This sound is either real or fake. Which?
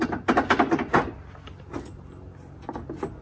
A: real